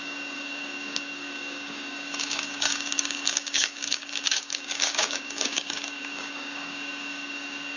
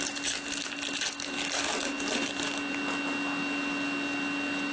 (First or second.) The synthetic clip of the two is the first